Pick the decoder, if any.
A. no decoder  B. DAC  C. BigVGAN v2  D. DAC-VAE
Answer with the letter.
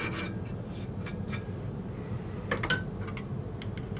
A